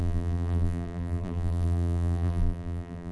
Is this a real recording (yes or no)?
no